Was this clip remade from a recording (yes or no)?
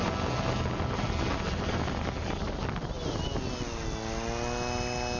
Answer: no